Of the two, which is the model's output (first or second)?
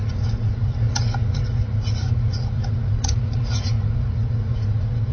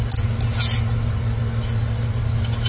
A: first